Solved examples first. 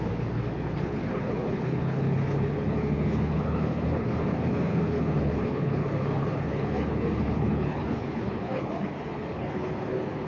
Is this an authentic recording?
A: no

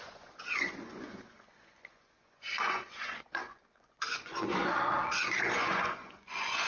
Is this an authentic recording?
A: no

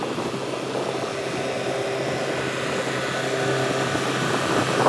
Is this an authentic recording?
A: yes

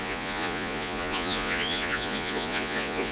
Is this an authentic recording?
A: no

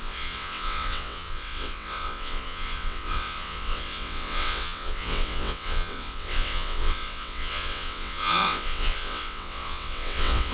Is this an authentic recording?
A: no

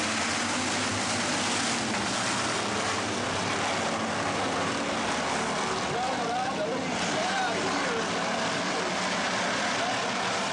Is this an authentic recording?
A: yes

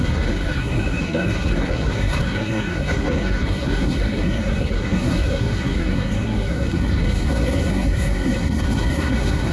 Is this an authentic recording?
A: no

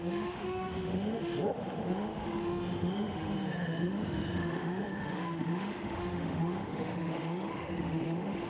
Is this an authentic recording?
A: no